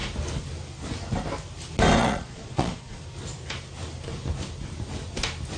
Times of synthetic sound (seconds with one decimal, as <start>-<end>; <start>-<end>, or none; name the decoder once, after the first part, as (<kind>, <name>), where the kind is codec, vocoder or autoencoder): 2.0-3.0 (vocoder, Vocos)